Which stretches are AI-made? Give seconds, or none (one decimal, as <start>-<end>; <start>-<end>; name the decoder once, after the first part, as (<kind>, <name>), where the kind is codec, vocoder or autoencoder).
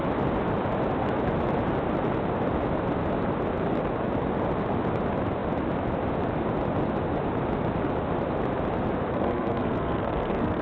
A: 9.1-10.6 (codec, SNAC)